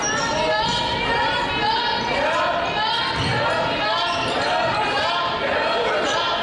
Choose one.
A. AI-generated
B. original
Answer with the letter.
B